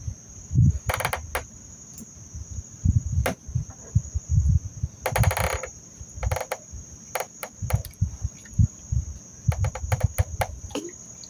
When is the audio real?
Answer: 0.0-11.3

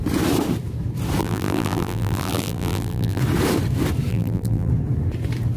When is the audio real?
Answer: 0.0-1.2; 3.2-4.1; 4.7-5.6